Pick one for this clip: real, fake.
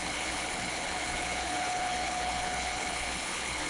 fake